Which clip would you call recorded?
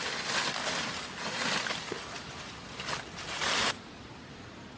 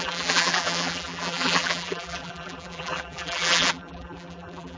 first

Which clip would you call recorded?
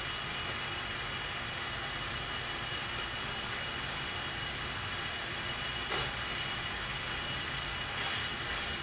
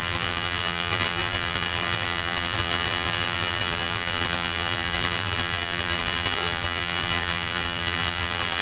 first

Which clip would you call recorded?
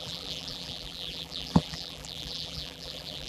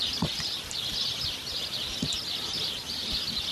second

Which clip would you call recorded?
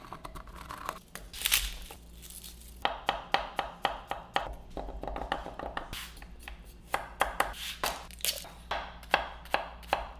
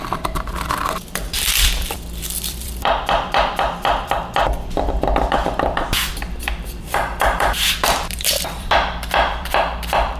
first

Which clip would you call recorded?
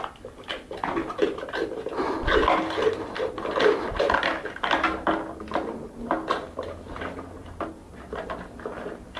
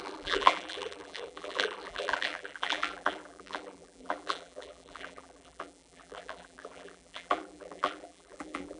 first